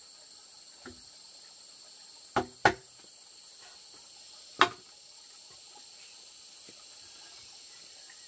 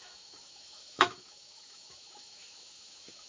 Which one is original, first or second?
first